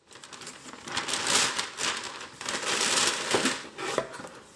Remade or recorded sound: recorded